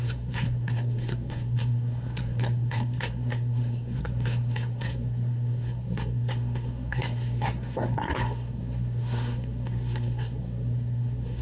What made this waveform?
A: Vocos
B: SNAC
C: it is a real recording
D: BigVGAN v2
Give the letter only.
B